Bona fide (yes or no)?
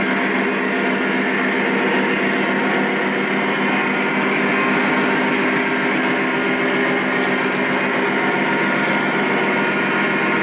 yes